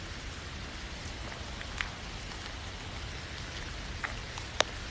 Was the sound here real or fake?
real